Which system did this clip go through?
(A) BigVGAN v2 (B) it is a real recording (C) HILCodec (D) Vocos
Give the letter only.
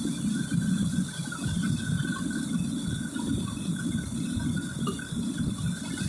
B